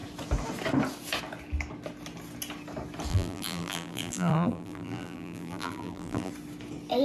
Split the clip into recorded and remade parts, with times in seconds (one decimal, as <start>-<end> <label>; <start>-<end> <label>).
0.0-3.1 recorded; 3.1-6.3 remade; 6.3-7.0 recorded